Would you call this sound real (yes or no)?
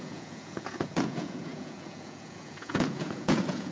no